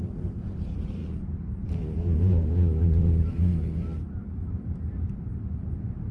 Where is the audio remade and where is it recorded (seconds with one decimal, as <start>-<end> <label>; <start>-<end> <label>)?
0.0-1.0 remade; 1.0-2.2 recorded; 2.2-3.5 remade; 3.5-4.3 recorded; 4.3-6.1 remade